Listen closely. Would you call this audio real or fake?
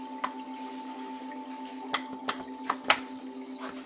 real